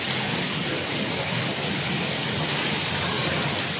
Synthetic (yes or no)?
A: no